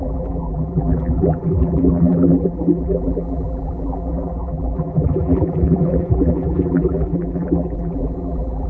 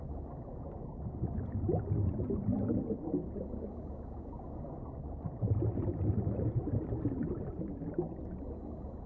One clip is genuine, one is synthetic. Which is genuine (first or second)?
second